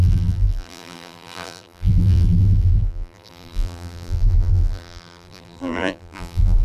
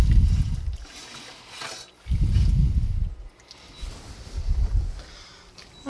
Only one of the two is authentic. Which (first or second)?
second